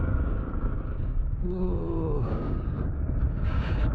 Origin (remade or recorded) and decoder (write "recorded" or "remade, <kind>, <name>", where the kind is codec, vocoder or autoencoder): remade, codec, DAC